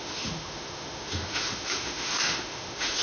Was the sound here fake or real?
fake